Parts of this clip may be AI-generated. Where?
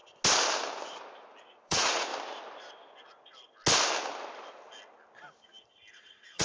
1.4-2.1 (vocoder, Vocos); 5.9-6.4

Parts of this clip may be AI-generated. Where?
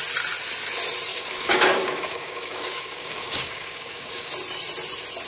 1.1-4.3 (codec, DAC)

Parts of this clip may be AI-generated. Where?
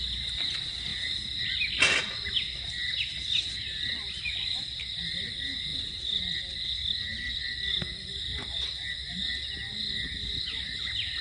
none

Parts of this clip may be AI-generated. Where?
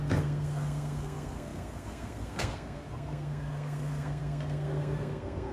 0.0-5.5 (codec, SNAC)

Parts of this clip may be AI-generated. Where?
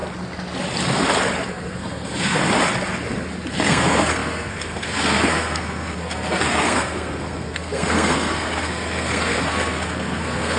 1.5-2.4 (codec, SNAC); 3.5-10.6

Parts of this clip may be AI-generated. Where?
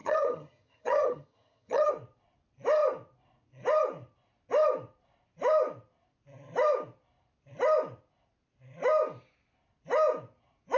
0.0-1.9 (vocoder, HiFi-GAN)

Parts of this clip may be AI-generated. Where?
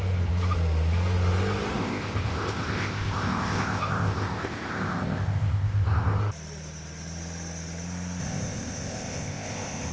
1.8-6.2 (codec, ZipCodec); 8.2-9.9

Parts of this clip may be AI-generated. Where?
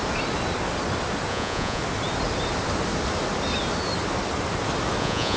1.3-1.8 (vocoder, Vocos); 5.0-5.4